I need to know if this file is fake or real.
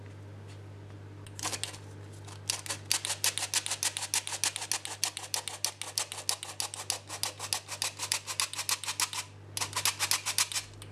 real